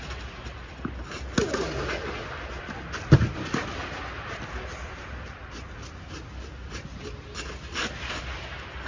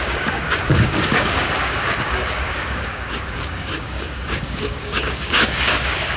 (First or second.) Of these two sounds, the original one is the first